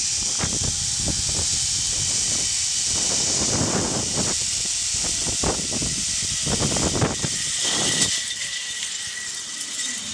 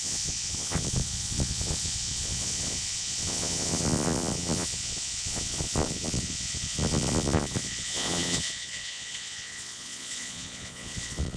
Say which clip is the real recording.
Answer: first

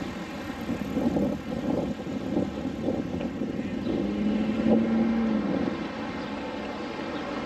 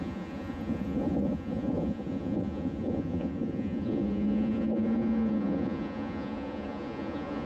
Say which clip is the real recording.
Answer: first